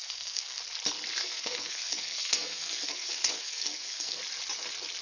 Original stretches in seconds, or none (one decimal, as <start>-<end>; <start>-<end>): 0.6-1.2; 4.2-5.0